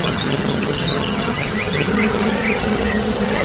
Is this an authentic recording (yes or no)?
no